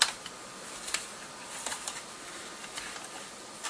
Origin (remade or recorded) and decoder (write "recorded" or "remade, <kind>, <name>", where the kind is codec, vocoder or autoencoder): recorded